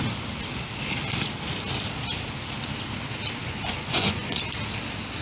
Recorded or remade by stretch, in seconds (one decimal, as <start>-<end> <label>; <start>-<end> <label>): 0.0-3.4 recorded; 3.4-4.4 remade; 4.4-5.2 recorded